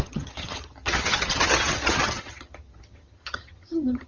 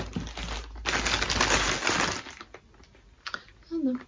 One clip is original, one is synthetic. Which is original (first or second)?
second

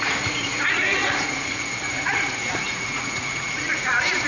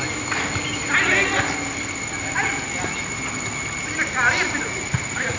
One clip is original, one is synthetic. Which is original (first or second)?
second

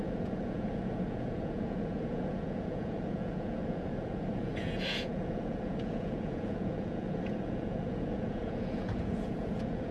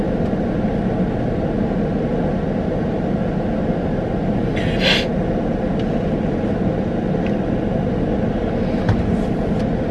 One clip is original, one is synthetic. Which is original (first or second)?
second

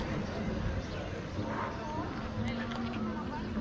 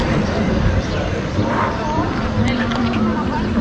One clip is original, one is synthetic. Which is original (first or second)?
first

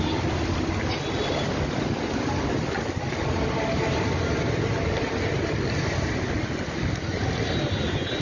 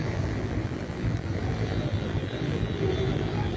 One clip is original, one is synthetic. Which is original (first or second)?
first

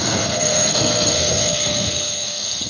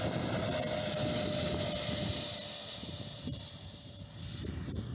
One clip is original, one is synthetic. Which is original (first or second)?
second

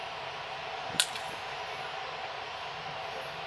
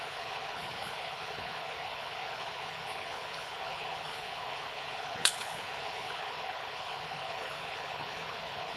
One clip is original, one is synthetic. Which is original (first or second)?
first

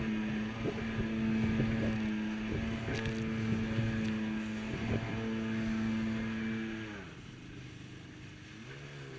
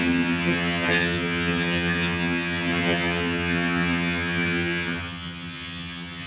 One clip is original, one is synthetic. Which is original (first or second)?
first